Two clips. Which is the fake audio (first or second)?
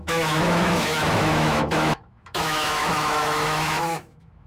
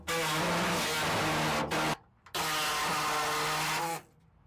first